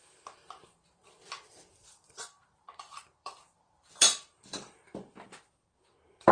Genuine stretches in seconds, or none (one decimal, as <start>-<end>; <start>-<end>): 0.0-1.0; 4.8-6.3